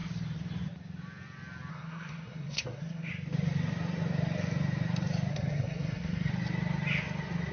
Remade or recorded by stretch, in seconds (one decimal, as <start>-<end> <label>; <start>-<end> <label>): 0.0-1.7 recorded; 1.7-3.1 remade; 3.1-5.3 recorded; 5.3-6.3 remade; 6.3-7.5 recorded